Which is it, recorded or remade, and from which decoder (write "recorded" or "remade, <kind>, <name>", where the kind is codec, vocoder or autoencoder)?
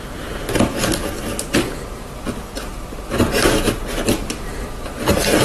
recorded